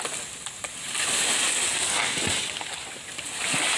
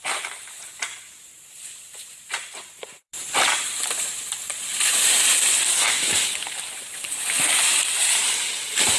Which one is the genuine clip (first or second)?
first